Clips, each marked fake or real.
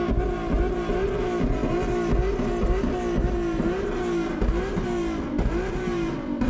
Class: real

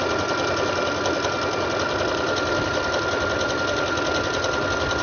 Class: real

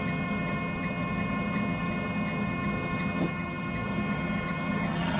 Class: fake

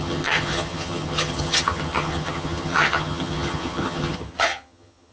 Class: fake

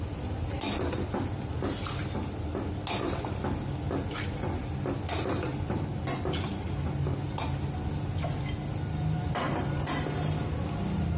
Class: real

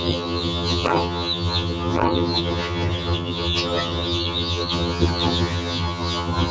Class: fake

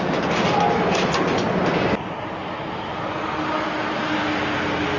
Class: real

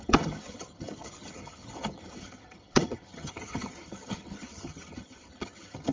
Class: fake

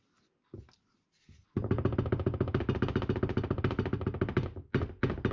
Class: real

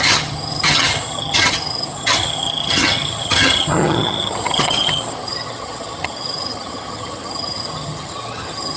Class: fake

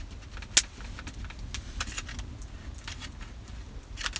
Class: real